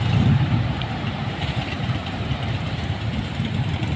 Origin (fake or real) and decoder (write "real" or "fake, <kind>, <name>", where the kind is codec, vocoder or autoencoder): fake, vocoder, BigVGAN v2